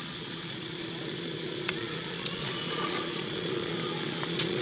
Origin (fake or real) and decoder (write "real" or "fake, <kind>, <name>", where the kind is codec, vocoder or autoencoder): fake, vocoder, Vocos